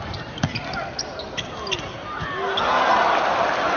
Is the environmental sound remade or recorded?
recorded